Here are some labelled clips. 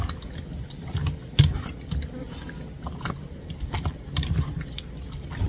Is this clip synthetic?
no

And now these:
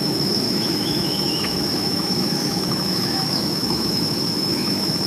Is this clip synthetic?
yes